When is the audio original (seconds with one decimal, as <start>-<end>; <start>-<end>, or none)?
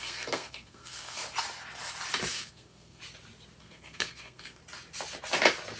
1.2-2.3; 3.0-3.6; 4.6-5.8